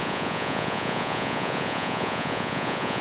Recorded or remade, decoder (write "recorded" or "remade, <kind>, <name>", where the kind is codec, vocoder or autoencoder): remade, vocoder, Vocos